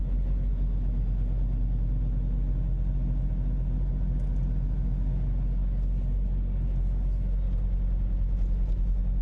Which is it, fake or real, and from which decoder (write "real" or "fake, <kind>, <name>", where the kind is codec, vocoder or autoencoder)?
real